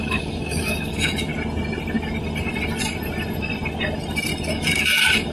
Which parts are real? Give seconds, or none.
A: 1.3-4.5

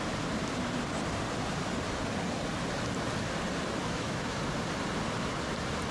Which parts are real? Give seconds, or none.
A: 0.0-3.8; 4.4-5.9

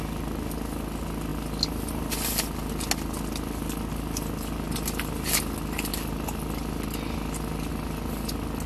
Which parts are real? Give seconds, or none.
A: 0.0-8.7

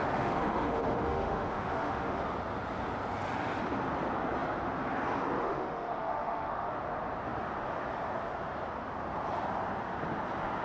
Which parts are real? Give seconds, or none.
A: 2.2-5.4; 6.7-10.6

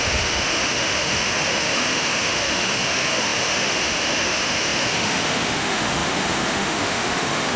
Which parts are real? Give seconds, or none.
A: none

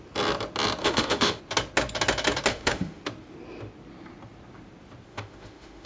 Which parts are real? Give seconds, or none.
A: 0.0-0.8; 1.4-2.5; 3.0-5.1